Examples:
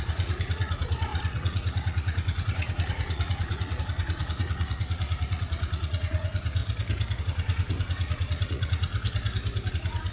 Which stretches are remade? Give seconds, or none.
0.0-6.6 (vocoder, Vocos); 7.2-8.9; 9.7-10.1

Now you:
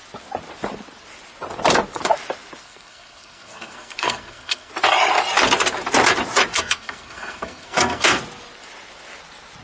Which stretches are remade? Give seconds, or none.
2.6-4.7 (codec, SNAC); 6.5-8.2